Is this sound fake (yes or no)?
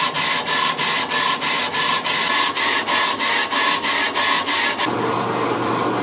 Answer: no